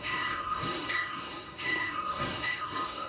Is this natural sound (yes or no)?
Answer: no